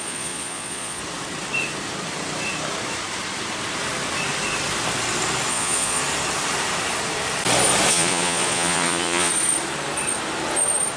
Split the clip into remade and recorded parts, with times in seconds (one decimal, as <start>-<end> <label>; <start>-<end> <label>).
0.0-1.0 remade; 1.0-5.5 recorded; 5.5-6.0 remade; 6.0-7.9 recorded; 7.9-9.3 remade; 9.3-11.0 recorded